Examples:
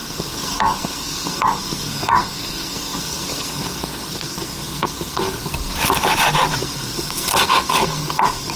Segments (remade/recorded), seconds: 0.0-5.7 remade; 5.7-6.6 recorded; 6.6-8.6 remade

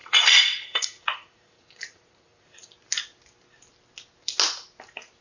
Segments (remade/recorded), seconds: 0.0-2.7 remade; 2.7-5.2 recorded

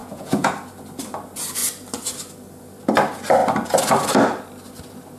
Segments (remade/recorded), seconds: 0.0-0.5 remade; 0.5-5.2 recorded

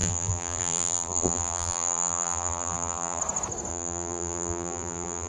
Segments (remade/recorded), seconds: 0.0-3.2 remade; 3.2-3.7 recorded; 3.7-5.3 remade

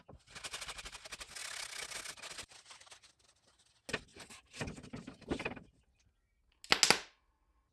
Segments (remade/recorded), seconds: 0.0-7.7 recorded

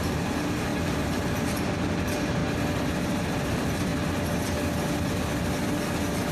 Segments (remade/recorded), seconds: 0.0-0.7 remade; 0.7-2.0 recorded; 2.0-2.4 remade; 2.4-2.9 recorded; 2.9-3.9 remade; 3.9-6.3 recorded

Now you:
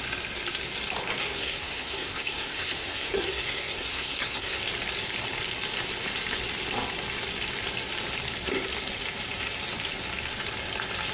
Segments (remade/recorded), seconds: 0.0-1.2 recorded; 1.2-4.6 remade; 4.6-11.1 recorded

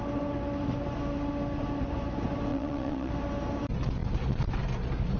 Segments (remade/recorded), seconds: 0.0-2.5 recorded; 2.5-3.1 remade; 3.1-5.2 recorded